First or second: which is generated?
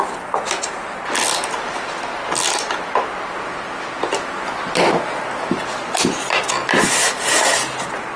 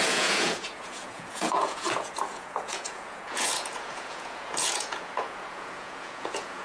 second